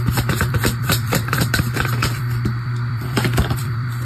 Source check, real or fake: fake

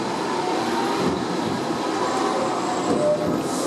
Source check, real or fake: real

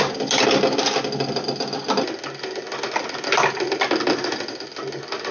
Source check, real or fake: real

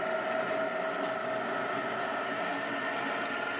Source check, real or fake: real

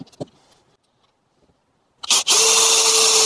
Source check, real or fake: real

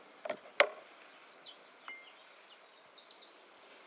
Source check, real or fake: real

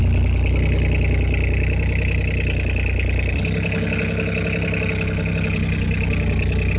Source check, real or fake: real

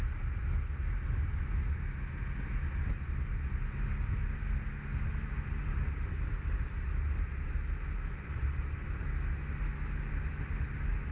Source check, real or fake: real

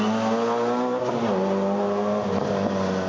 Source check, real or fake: real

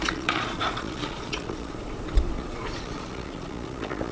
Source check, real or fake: fake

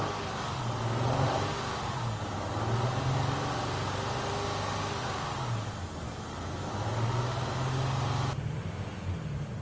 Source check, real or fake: real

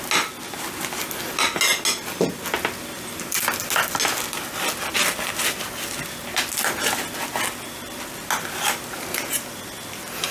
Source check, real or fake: real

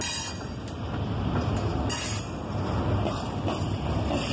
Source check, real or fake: real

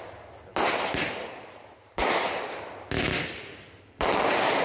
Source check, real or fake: real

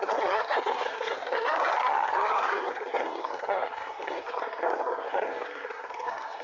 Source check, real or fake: fake